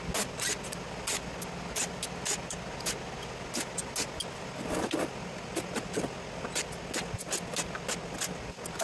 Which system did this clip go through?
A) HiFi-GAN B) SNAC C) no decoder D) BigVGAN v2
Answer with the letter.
C